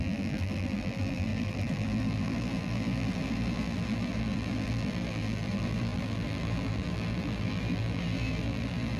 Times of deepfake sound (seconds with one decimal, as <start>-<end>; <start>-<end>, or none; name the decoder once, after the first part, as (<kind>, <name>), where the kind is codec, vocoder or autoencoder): 0.0-9.0 (vocoder, BigVGAN v2)